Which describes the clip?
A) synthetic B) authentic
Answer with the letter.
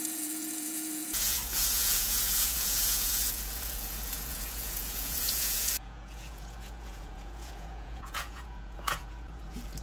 A